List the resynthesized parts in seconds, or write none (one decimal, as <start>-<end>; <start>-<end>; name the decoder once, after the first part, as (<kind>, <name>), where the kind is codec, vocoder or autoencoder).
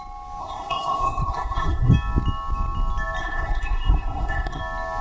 0.4-1.9 (codec, SNAC); 3.2-4.6